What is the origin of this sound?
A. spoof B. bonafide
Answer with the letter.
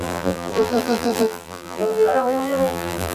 A